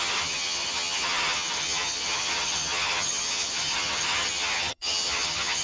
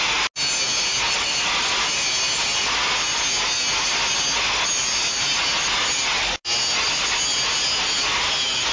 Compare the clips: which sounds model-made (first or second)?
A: first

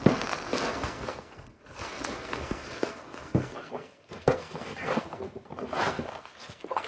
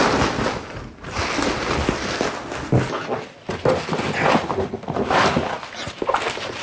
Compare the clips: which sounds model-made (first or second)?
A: first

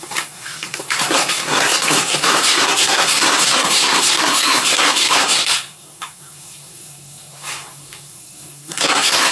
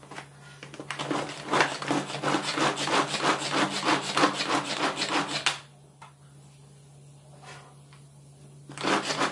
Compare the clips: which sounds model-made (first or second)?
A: first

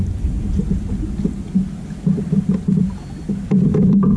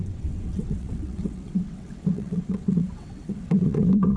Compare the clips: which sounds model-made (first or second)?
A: second